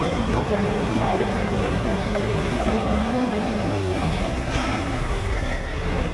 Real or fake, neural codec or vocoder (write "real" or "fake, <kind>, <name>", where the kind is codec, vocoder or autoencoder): fake, codec, SNAC